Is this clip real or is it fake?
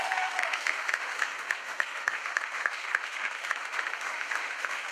fake